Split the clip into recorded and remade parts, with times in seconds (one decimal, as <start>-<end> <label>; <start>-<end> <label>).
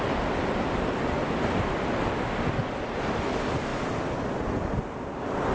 0.0-5.5 recorded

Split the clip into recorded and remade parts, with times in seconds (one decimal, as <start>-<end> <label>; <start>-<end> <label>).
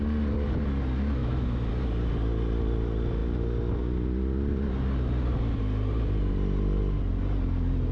0.0-1.2 recorded; 1.2-1.7 remade; 1.7-7.9 recorded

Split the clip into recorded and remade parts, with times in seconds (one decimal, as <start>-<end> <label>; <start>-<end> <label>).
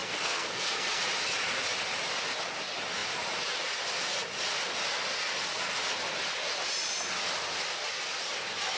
0.0-1.0 remade; 1.0-8.8 recorded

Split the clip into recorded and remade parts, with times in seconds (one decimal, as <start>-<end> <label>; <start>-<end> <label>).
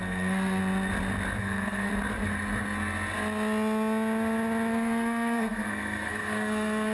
0.0-0.6 remade; 0.6-1.4 recorded; 1.4-1.9 remade; 1.9-4.7 recorded; 4.7-6.9 remade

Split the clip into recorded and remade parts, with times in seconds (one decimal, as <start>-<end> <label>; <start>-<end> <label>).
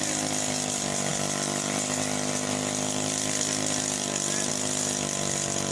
0.0-5.7 recorded